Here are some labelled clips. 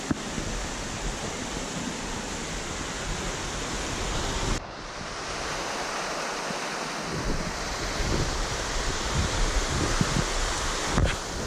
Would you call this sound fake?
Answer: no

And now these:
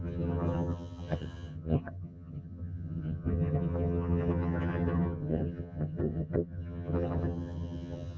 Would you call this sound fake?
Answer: yes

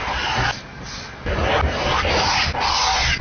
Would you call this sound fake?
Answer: no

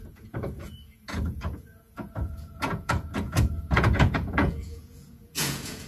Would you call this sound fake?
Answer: yes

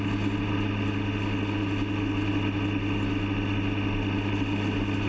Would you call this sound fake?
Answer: no